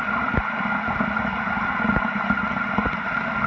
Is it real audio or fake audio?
real